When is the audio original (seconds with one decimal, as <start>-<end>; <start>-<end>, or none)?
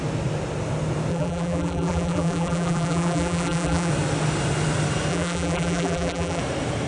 0.0-1.1; 3.9-5.1; 6.4-6.9